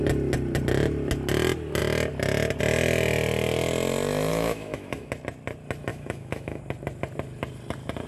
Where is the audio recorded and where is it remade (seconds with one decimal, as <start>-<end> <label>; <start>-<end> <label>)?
0.0-4.3 recorded; 4.3-5.1 remade; 5.1-5.9 recorded; 5.9-6.6 remade; 6.6-8.1 recorded